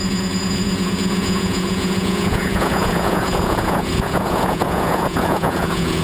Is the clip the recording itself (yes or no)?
no